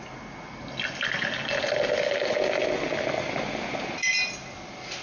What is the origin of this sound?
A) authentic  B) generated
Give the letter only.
A